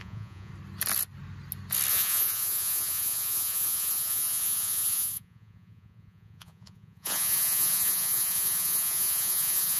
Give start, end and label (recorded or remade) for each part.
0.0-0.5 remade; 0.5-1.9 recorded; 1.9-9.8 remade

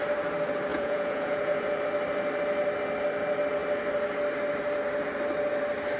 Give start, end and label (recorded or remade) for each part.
0.0-0.7 recorded; 0.7-1.8 remade; 1.8-6.0 recorded